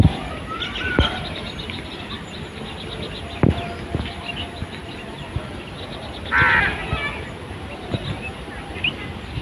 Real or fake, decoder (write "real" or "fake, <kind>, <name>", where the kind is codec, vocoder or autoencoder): real